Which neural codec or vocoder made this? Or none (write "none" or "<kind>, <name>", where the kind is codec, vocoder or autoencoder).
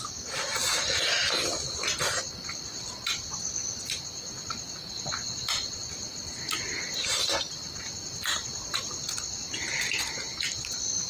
none